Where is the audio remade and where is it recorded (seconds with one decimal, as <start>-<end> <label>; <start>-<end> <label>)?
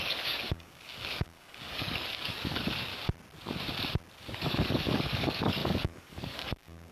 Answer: 0.0-2.9 remade; 2.9-4.2 recorded; 4.2-6.9 remade